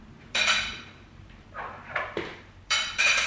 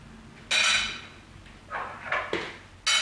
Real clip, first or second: second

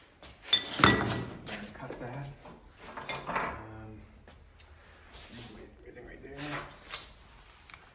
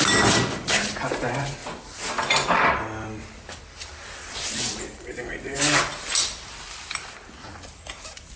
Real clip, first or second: first